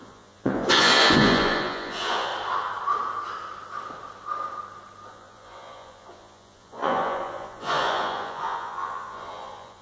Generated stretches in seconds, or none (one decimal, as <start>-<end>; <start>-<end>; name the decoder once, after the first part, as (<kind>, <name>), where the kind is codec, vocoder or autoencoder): 0.0-2.3 (vocoder, Vocos); 5.1-9.8